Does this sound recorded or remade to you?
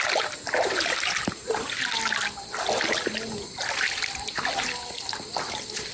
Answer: recorded